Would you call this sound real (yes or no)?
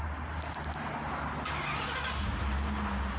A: yes